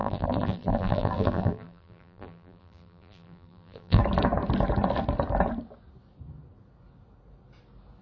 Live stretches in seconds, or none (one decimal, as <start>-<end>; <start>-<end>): 4.0-8.0